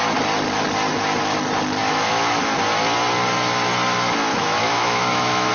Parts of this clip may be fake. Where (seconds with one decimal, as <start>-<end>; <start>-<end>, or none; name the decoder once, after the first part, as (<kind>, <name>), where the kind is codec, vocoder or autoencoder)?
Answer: 1.8-2.4 (autoencoder, DAC-VAE); 4.3-5.5